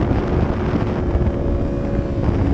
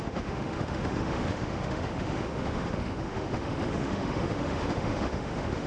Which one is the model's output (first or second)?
second